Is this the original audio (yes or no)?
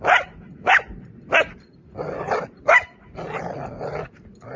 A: yes